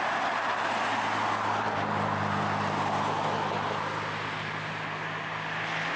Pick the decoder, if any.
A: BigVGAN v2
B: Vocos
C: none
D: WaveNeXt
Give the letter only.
C